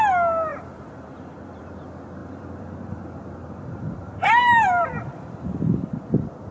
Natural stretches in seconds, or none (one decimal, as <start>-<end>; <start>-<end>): 0.0-0.5; 1.6-2.2; 6.1-6.5